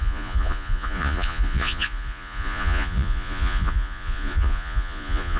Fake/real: fake